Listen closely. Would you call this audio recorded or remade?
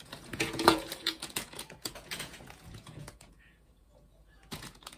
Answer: remade